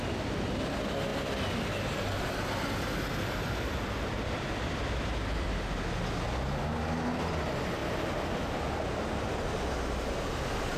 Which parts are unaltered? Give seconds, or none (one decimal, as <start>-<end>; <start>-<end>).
0.0-10.8